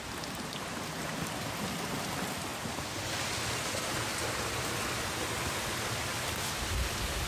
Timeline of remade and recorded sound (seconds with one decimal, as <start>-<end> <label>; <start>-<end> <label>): 0.0-7.3 recorded